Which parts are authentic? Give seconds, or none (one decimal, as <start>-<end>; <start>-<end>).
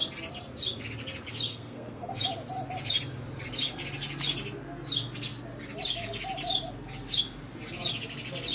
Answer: 0.0-1.5; 2.1-8.5